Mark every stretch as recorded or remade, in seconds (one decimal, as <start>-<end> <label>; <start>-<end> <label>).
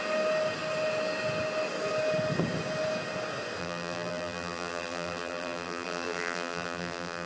0.0-3.6 recorded; 3.6-7.3 remade